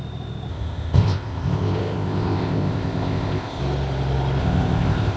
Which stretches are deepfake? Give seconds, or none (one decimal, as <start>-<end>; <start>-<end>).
0.5-3.6; 4.4-5.2